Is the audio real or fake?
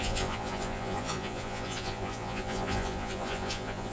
fake